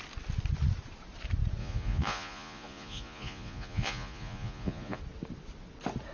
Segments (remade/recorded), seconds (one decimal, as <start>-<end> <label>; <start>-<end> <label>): 0.0-1.6 recorded; 1.6-5.0 remade; 5.0-6.1 recorded